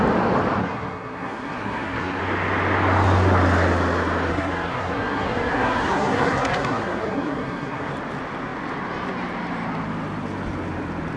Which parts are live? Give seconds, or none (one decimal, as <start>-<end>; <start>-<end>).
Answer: 0.0-0.6; 2.2-4.3; 7.9-11.2